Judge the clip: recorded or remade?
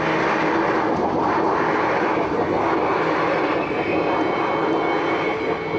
recorded